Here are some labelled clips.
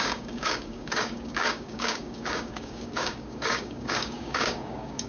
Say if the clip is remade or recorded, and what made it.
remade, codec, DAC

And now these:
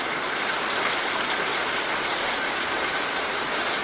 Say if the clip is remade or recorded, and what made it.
recorded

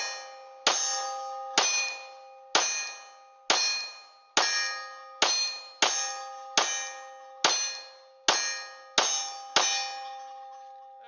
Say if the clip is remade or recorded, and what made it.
recorded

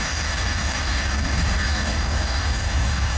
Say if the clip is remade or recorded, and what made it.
remade, codec, DAC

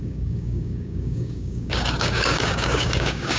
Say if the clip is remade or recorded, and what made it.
remade, codec, DAC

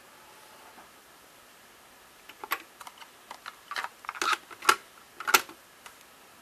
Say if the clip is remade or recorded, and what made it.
recorded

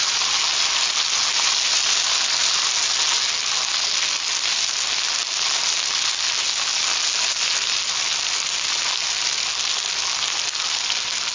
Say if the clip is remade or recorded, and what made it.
recorded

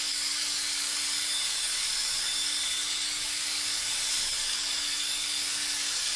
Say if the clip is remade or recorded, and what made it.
remade, codec, DAC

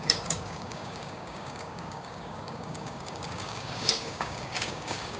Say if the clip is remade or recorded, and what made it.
remade, codec, DAC